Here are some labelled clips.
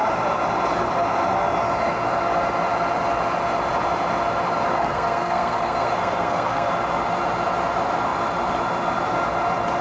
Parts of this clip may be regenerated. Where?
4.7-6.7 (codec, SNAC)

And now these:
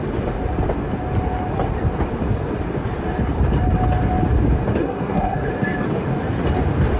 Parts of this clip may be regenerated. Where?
4.8-5.5 (codec, SNAC)

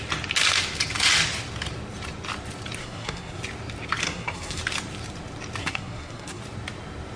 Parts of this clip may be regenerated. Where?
2.8-3.4 (codec, SNAC); 4.0-4.6; 5.6-6.4

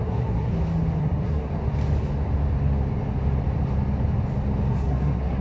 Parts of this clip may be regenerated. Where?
0.0-0.5 (codec, SNAC); 1.0-1.5; 4.7-5.4

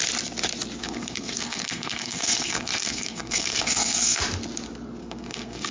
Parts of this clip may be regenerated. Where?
0.8-4.2 (codec, SNAC); 5.0-5.7